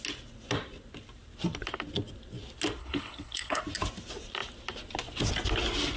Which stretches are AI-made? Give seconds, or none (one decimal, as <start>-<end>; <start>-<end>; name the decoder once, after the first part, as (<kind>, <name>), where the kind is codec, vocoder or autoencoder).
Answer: 2.8-3.6 (codec, HILCodec)